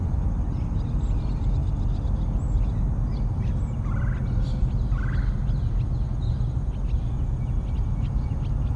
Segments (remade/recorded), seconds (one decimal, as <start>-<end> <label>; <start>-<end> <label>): 0.0-8.8 recorded